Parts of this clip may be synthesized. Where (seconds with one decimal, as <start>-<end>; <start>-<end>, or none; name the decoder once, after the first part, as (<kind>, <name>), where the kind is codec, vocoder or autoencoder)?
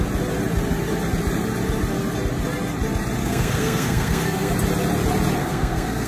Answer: 3.2-4.5 (codec, SNAC); 5.4-6.1